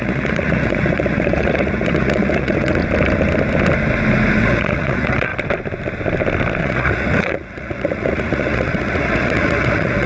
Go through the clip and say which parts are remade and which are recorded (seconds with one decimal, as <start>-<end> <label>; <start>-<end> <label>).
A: 0.0-2.8 remade; 2.8-4.4 recorded; 4.4-5.3 remade; 5.3-6.6 recorded; 6.6-10.1 remade